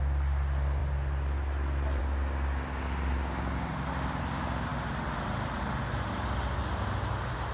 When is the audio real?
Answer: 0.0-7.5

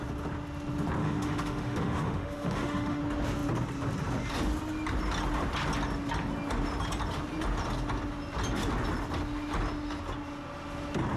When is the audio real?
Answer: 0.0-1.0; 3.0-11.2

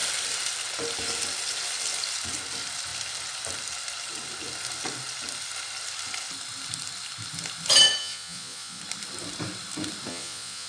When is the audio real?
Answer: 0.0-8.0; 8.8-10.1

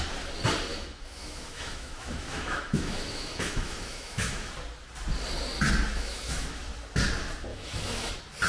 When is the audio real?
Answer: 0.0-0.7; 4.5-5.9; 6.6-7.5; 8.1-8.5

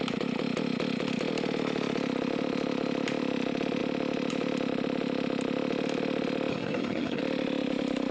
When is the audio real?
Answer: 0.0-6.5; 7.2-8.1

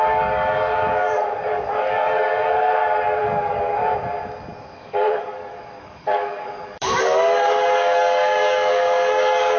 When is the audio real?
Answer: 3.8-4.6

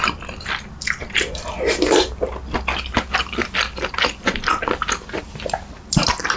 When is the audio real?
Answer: 0.0-6.4